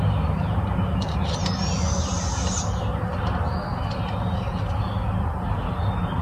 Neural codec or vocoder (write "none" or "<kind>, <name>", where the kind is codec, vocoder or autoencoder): none